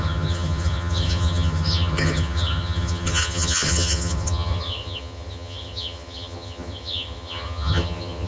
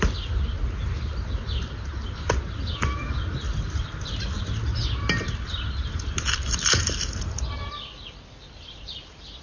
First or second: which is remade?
first